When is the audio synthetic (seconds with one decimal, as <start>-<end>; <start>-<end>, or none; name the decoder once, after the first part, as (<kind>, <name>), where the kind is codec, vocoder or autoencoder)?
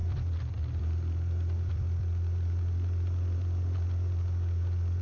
none